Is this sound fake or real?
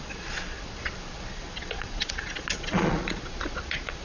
fake